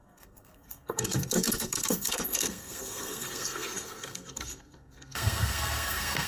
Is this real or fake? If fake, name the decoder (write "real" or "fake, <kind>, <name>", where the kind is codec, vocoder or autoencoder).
fake, codec, SNAC